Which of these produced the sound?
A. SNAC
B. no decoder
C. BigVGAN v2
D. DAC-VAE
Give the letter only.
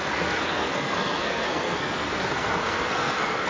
A